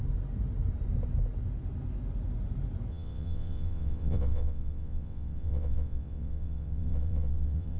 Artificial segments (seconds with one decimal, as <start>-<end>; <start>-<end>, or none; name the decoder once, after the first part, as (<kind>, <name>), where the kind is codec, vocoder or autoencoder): 2.9-7.8 (vocoder, WaveNeXt)